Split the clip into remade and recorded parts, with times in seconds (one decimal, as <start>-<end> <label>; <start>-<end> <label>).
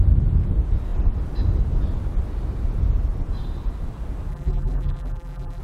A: 0.0-4.3 recorded; 4.3-5.6 remade